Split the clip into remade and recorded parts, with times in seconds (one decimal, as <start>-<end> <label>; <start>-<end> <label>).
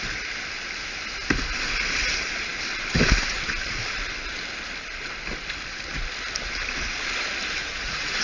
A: 0.0-7.6 recorded; 7.6-8.2 remade